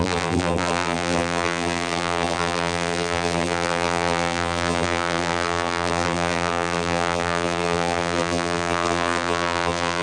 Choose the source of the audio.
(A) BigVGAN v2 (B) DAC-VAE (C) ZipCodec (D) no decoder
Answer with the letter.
A